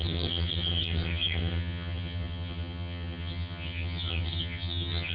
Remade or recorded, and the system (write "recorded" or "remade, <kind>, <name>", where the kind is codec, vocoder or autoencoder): remade, vocoder, HiFi-GAN